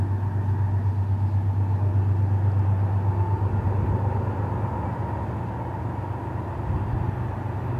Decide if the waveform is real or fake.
real